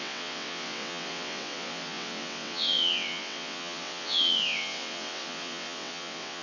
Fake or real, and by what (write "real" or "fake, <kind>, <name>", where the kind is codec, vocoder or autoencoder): fake, vocoder, WaveNeXt